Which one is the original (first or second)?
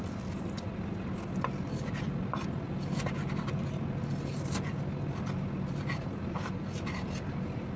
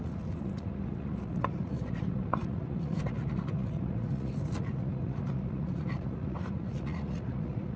first